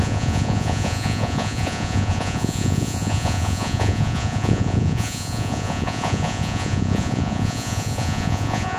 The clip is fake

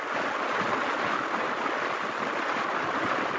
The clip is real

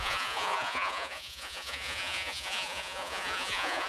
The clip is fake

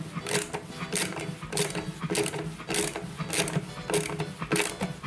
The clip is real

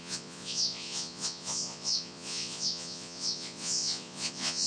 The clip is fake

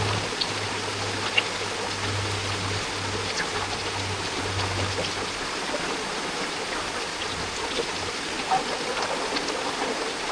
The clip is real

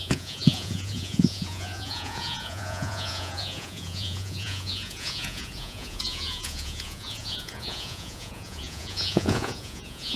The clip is fake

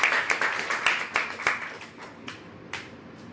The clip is real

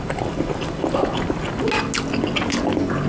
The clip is real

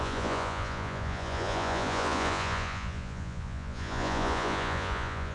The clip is fake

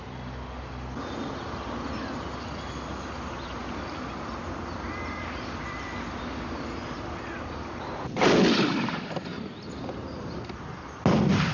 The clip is real